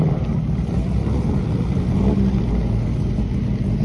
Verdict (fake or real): real